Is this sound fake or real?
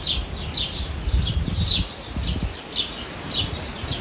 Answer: real